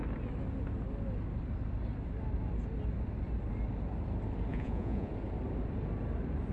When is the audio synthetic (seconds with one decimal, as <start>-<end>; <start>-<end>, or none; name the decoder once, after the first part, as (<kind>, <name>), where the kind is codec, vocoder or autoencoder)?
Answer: 4.5-5.1 (vocoder, Vocos)